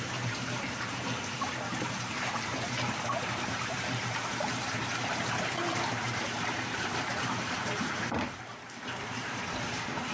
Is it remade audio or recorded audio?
remade